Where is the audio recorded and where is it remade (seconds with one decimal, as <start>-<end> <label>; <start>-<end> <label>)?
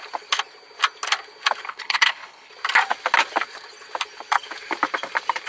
0.0-1.7 recorded; 1.7-2.5 remade; 2.5-5.5 recorded